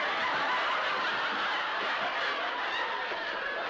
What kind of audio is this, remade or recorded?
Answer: recorded